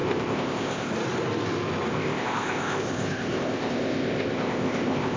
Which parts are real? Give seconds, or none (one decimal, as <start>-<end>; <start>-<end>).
0.9-1.9